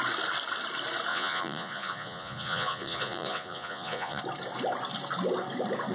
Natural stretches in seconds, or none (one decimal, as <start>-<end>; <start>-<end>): 0.0-1.1; 4.2-5.9